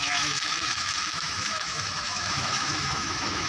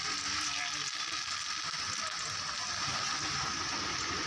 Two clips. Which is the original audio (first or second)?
second